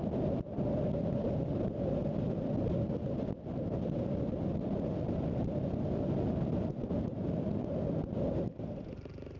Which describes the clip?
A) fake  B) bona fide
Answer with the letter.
B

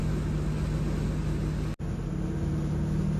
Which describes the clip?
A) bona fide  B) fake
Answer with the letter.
A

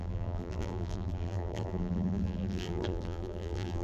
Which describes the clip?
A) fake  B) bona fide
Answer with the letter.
A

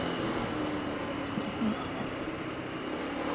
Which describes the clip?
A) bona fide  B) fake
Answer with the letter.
A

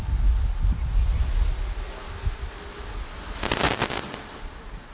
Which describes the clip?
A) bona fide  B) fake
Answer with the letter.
A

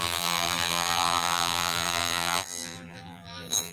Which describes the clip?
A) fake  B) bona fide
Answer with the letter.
A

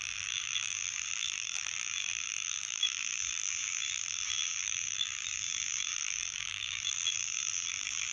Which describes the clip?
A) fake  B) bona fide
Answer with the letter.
A